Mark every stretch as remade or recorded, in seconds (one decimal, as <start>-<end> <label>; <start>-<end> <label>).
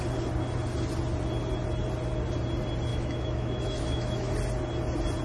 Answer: 0.0-2.9 recorded; 2.9-4.3 remade; 4.3-5.2 recorded